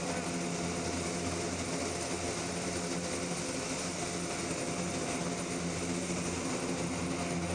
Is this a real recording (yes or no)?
yes